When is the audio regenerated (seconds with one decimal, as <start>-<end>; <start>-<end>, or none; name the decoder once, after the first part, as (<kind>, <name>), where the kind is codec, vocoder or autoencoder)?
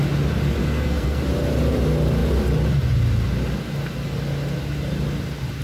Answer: 0.6-1.2 (codec, SNAC)